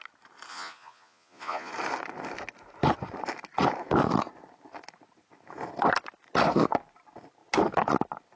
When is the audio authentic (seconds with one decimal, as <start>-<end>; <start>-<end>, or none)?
0.0-0.5; 1.7-8.4